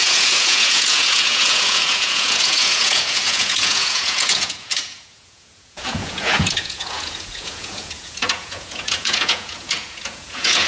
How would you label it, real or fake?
fake